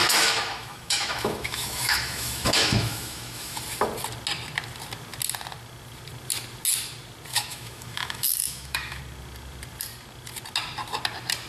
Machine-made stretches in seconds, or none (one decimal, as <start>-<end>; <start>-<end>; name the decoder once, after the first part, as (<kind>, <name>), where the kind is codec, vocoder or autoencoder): 0.0-3.6 (autoencoder, DAC-VAE); 7.3-9.0